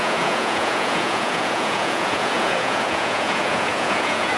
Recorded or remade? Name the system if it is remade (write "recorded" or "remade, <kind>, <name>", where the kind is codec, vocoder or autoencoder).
remade, vocoder, Vocos